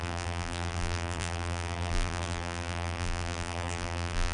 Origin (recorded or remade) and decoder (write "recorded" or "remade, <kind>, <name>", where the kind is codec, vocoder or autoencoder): remade, vocoder, BigVGAN v2